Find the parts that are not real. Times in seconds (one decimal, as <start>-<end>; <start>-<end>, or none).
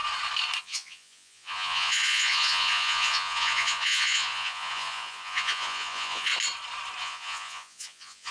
0.6-6.3; 7.0-8.3